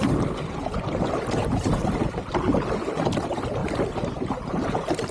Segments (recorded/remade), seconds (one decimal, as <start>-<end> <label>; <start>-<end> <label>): 0.0-5.1 recorded